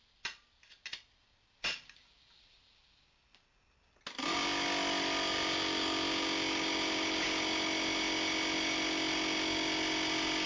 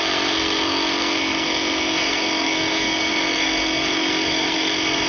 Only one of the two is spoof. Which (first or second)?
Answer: second